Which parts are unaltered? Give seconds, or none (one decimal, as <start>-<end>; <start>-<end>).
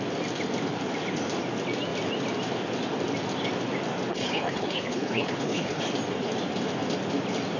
0.0-4.1; 5.8-7.6